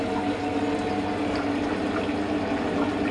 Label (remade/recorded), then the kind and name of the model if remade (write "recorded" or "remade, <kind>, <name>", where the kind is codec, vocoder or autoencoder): recorded